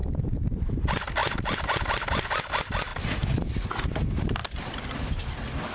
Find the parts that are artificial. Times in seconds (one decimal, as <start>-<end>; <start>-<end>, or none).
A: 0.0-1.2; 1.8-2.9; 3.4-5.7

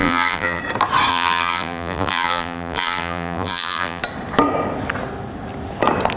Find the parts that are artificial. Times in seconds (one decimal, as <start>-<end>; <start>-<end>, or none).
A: 0.0-0.6; 1.1-4.0

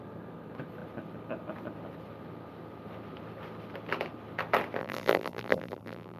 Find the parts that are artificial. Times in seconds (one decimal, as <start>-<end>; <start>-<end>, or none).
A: 4.8-6.2